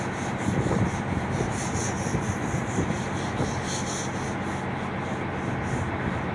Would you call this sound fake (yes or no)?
no